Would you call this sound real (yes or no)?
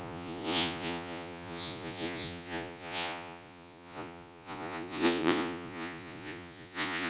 no